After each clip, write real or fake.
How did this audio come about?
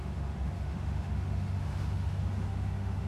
fake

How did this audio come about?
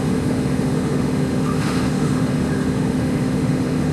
fake